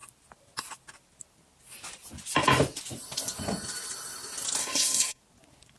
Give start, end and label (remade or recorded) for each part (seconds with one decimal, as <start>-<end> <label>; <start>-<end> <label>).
0.0-4.6 recorded; 4.6-5.2 remade; 5.2-5.8 recorded